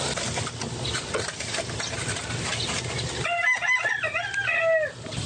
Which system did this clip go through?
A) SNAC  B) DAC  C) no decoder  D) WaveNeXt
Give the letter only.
C